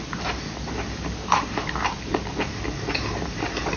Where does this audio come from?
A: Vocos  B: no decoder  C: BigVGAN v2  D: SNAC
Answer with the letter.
B